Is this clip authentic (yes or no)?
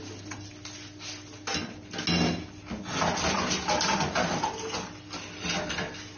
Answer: yes